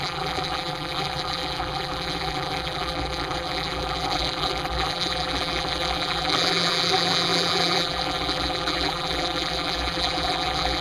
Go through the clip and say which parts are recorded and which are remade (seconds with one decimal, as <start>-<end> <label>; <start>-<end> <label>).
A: 0.0-10.8 remade